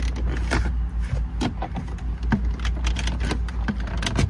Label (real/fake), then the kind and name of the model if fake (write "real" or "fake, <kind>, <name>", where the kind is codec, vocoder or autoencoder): real